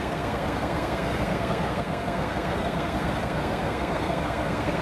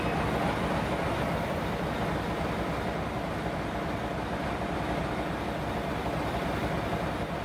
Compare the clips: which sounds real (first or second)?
second